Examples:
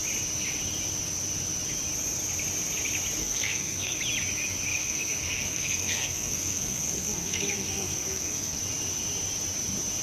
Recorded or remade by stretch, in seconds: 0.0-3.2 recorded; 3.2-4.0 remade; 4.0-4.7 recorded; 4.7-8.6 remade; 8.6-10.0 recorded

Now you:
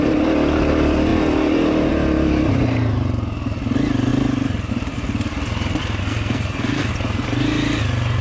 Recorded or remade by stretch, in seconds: 0.0-6.0 recorded; 6.0-6.9 remade; 6.9-8.2 recorded

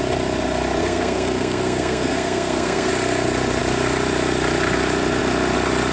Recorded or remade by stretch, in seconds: 0.0-0.8 recorded; 0.8-2.9 remade; 2.9-5.9 recorded

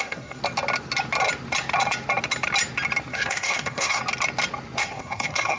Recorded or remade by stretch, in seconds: 0.0-0.4 remade; 0.4-3.1 recorded; 3.1-4.0 remade; 4.0-4.8 recorded; 4.8-5.6 remade

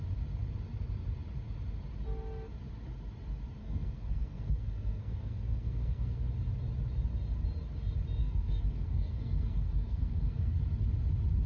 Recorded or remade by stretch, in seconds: 0.0-3.6 recorded; 3.6-6.3 remade; 6.3-8.2 recorded; 8.2-10.6 remade; 10.6-11.5 recorded

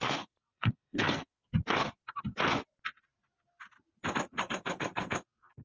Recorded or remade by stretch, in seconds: 0.0-1.5 remade; 1.5-4.4 recorded; 4.4-5.6 remade

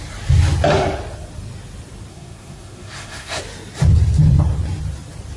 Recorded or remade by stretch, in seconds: 0.0-2.1 recorded; 2.1-3.4 remade; 3.4-5.4 recorded